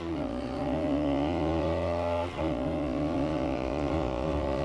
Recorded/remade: remade